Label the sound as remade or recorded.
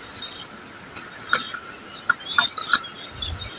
recorded